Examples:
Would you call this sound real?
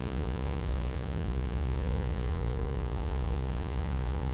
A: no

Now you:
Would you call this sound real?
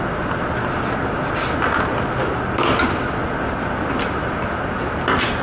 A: yes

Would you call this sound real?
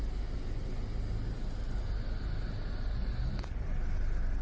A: yes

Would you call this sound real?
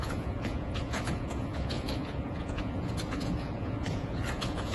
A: no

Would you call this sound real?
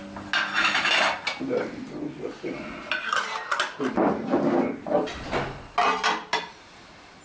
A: yes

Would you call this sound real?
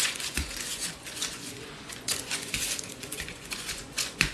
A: no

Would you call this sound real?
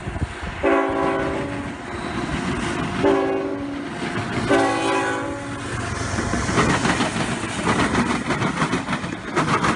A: yes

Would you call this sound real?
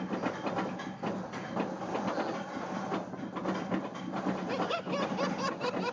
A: yes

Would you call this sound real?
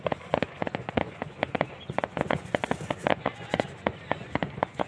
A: no